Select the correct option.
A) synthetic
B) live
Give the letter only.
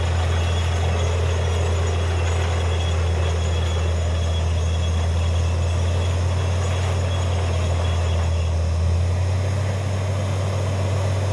B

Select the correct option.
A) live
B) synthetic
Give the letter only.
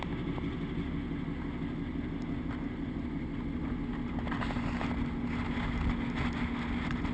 A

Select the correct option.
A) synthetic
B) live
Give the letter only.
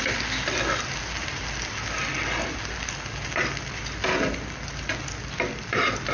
B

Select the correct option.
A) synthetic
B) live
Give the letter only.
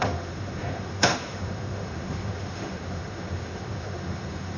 A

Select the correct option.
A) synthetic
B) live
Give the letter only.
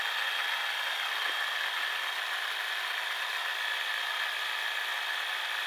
B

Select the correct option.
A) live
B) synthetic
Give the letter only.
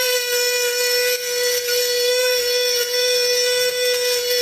B